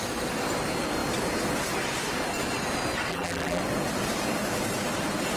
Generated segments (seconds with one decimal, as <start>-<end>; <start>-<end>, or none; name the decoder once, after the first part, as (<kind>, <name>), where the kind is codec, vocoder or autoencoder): 3.1-3.6 (vocoder, BigVGAN v2)